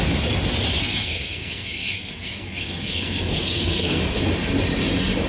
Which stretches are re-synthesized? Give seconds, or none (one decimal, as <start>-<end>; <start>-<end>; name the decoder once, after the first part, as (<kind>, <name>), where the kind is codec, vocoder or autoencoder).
0.8-4.0 (codec, SNAC)